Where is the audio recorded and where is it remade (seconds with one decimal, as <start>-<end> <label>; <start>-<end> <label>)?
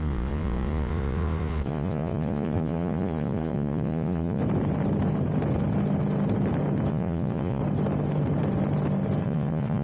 0.0-4.4 remade; 4.4-6.9 recorded; 6.9-7.6 remade; 7.6-9.2 recorded; 9.2-9.8 remade